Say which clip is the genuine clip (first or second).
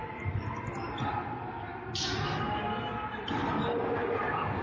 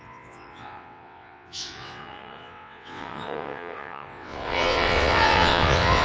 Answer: first